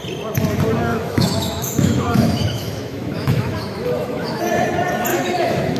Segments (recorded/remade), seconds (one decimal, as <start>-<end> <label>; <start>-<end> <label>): 0.0-0.9 recorded; 0.9-4.4 remade; 4.4-5.1 recorded; 5.1-5.8 remade